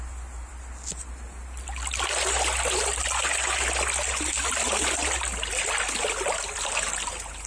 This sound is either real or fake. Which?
real